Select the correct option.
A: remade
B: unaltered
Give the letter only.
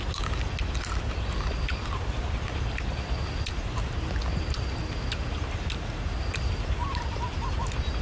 B